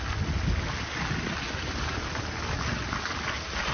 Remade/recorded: recorded